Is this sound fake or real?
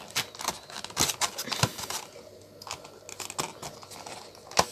real